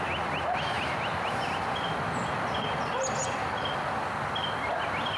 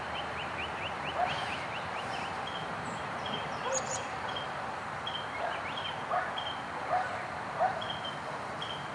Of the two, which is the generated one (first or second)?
second